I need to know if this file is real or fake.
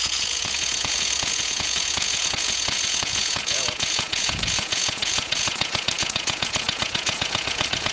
fake